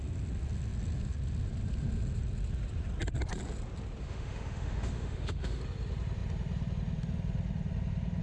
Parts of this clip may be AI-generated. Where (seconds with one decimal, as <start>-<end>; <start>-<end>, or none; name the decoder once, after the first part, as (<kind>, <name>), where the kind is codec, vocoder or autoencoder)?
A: 4.0-5.6 (autoencoder, DAC-VAE)